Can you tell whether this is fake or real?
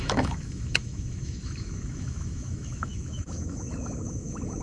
fake